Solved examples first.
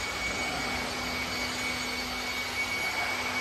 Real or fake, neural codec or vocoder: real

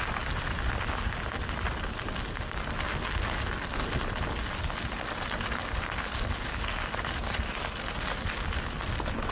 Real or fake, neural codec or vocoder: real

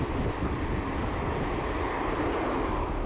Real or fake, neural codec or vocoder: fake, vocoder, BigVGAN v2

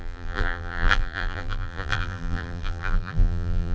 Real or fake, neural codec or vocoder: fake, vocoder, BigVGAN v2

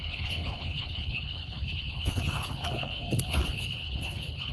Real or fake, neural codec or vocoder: fake, codec, HILCodec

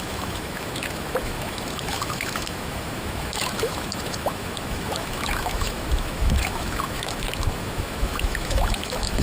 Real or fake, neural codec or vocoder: fake, autoencoder, DAC-VAE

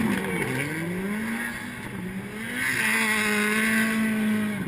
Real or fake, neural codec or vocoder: real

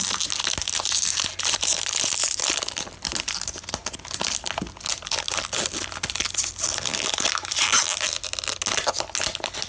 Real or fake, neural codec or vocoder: real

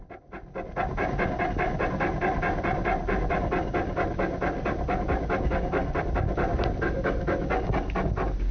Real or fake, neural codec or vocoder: real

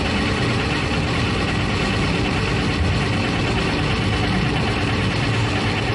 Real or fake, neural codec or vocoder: real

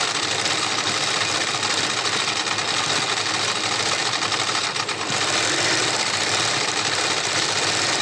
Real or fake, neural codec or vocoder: real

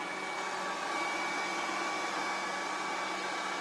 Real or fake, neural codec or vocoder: real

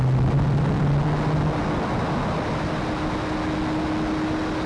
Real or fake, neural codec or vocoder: real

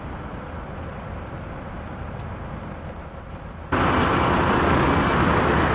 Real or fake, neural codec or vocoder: real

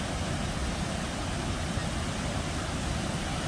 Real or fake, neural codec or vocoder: real